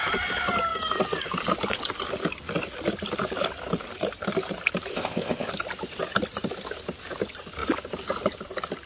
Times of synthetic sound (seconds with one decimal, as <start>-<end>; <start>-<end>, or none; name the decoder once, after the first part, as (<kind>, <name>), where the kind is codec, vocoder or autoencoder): 4.9-5.5 (codec, ZipCodec)